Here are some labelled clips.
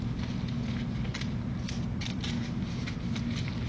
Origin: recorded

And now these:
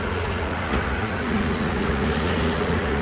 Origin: remade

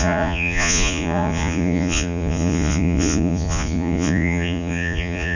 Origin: remade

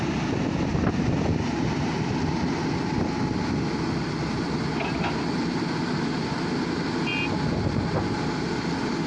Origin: recorded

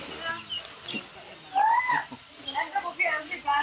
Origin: recorded